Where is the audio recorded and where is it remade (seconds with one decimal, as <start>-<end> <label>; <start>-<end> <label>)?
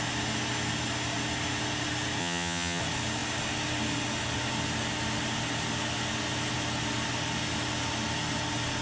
0.0-2.2 recorded; 2.2-2.8 remade; 2.8-8.8 recorded